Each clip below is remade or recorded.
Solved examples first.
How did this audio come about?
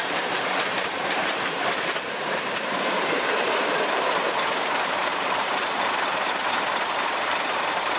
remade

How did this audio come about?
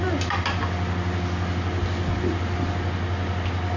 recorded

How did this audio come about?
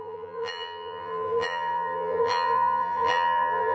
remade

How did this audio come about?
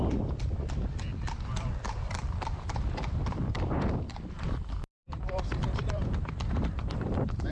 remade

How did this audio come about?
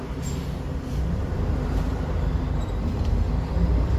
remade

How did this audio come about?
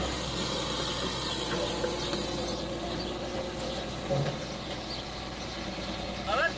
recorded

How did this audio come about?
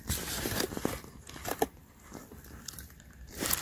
remade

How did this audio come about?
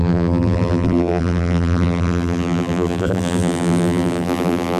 remade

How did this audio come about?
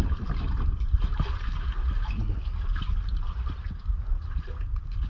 recorded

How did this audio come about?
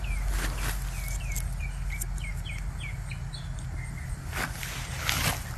recorded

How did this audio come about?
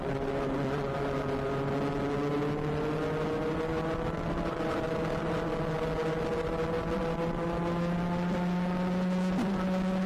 recorded